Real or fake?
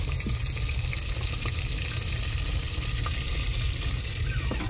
real